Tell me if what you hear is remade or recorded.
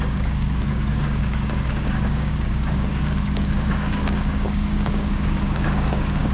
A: remade